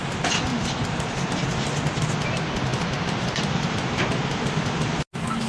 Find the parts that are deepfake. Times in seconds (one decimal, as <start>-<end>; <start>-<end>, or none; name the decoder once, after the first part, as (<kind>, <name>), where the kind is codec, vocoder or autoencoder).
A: 2.7-4.0 (vocoder, BigVGAN v2)